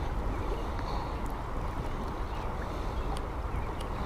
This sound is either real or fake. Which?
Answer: real